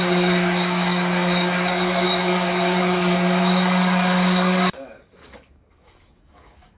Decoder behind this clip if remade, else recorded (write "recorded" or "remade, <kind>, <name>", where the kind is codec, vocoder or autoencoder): remade, codec, DAC